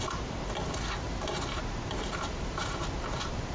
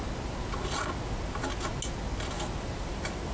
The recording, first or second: second